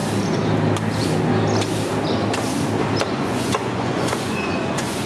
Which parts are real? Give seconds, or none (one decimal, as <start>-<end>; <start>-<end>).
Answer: 0.0-3.1